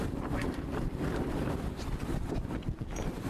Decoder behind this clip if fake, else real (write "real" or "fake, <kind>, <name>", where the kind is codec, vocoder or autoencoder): fake, vocoder, BigVGAN v2